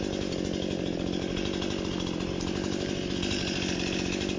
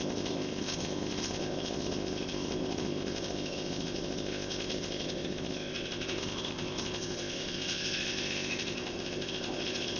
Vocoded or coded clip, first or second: second